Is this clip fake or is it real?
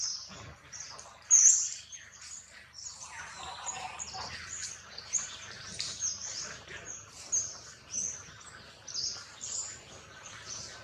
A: real